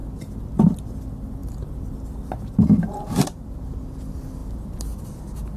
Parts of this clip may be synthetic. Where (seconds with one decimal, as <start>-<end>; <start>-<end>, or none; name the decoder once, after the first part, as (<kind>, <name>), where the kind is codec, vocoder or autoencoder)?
none